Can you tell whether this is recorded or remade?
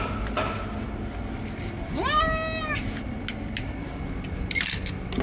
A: recorded